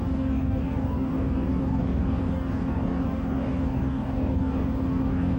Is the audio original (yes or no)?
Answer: no